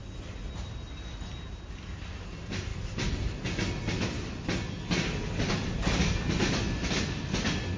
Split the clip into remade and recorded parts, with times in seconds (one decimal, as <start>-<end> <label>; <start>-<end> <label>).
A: 0.0-7.8 recorded